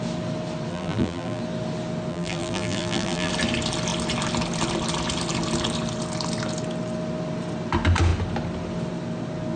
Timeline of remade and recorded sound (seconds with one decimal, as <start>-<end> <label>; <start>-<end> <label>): 0.0-0.7 recorded; 0.7-1.4 remade; 1.4-2.1 recorded; 2.1-3.3 remade; 3.3-9.6 recorded